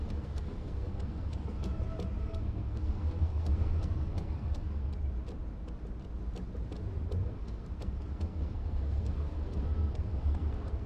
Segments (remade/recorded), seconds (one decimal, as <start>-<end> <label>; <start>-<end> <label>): 0.0-1.7 remade; 1.7-2.2 recorded; 2.2-4.9 remade; 4.9-7.2 recorded; 7.2-10.9 remade